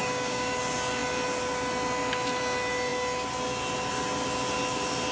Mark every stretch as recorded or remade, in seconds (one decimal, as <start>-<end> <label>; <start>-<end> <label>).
0.0-0.6 remade; 0.6-5.1 recorded